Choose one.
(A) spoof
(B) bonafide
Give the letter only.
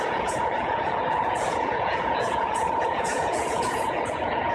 A